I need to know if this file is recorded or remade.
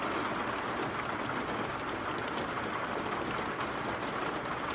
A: recorded